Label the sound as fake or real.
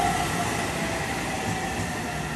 real